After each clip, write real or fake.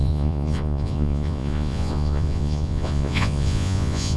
fake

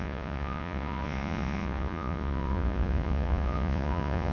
fake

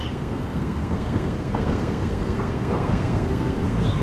fake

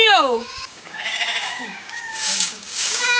fake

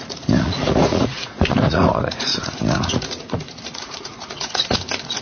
fake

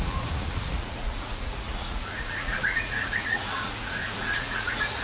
fake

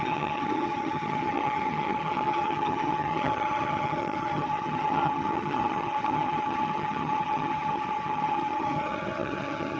fake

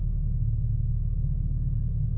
real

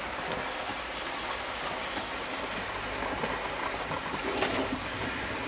real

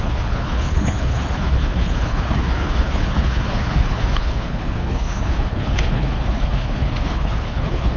fake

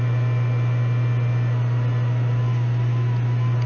real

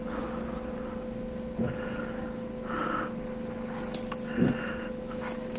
real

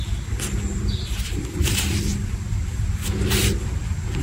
real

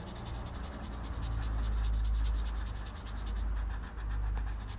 real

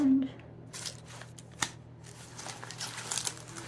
real